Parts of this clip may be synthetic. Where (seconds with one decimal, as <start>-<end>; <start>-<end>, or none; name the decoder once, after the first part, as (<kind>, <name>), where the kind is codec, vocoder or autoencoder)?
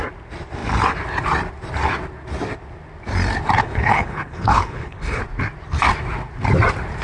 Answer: 3.6-5.2 (codec, HILCodec)